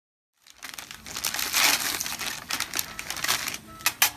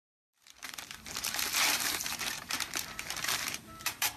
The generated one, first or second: second